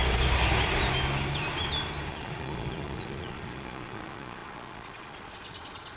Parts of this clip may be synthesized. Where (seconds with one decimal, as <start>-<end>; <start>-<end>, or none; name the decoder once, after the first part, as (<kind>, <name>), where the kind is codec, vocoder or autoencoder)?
2.1-6.0 (vocoder, Vocos)